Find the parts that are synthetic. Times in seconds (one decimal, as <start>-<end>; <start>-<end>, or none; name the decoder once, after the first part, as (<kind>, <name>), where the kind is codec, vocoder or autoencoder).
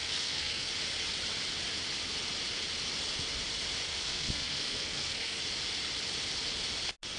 0.0-0.7 (codec, SNAC); 3.9-5.4